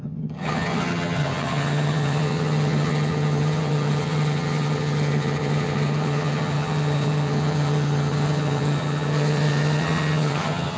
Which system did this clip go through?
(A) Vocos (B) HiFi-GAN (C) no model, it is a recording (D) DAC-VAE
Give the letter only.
B